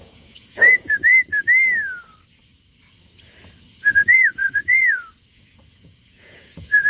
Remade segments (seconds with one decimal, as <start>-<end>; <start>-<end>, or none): 0.0-1.1; 3.9-6.9